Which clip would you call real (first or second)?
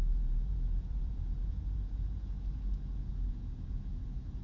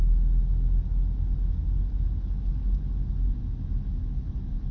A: second